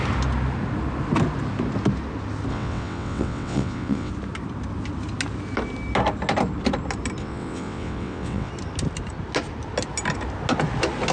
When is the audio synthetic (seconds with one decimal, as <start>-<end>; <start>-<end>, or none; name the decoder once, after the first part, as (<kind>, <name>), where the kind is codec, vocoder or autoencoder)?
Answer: 2.5-4.1 (vocoder, WaveNeXt); 7.2-8.5